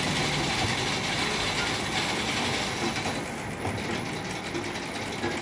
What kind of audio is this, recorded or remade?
recorded